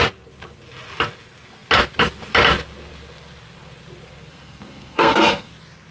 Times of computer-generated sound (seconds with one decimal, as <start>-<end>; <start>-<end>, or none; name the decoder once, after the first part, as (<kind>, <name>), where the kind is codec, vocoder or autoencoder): 4.3-5.5 (codec, SNAC)